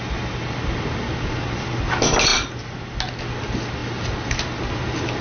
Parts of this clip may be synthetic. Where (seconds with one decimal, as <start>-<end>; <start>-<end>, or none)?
none